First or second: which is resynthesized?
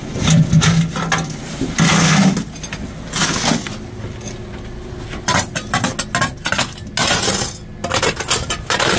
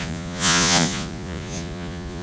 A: second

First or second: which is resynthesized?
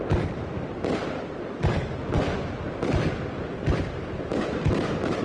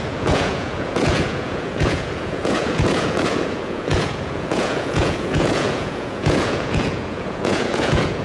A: second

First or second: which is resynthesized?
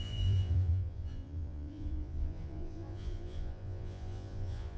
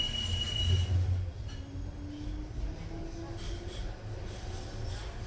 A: first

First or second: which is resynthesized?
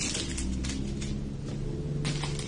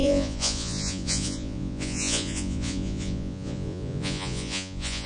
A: second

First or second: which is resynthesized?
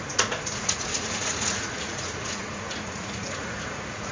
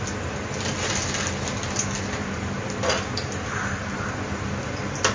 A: first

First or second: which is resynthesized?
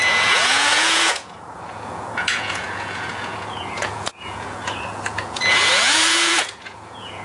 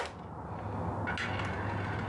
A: first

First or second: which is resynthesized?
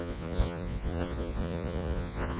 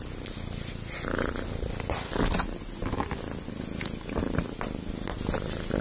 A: first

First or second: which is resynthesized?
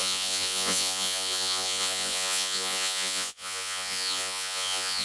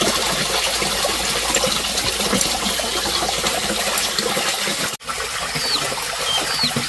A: first